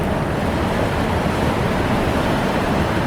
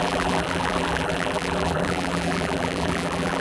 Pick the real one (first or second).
first